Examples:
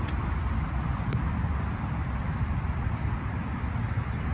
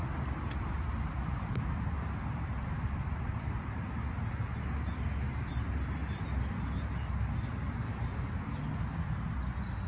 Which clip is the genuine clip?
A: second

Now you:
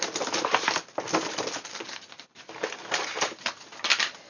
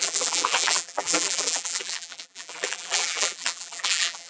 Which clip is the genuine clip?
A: first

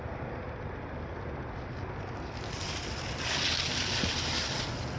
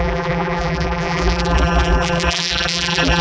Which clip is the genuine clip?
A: first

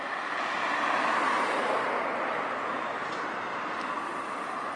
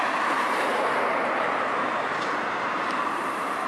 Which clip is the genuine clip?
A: first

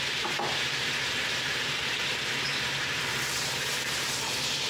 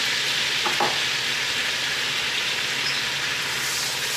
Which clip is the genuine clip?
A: second